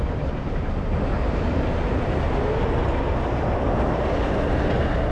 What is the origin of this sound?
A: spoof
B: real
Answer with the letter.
B